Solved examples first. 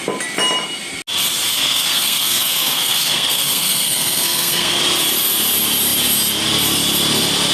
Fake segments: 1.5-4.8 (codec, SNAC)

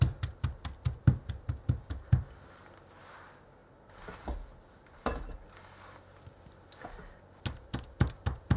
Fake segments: none